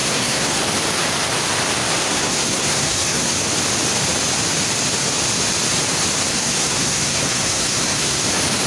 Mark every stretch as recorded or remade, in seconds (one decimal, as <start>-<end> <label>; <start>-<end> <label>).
0.0-0.6 remade; 0.6-2.0 recorded; 2.0-3.3 remade; 3.3-6.3 recorded; 6.3-8.2 remade; 8.2-8.7 recorded